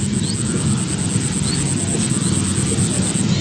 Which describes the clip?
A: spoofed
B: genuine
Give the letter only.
B